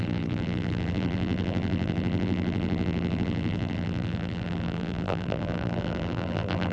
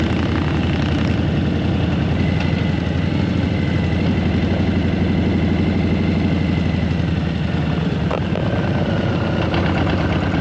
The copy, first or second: first